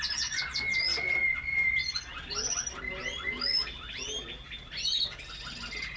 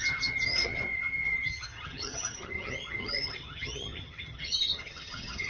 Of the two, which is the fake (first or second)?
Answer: second